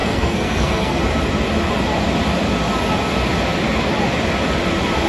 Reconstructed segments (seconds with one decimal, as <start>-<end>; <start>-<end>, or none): 0.0-1.0